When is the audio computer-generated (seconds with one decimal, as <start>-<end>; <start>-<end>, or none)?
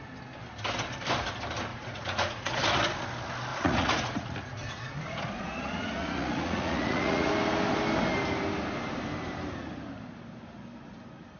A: 1.7-2.6; 3.5-7.3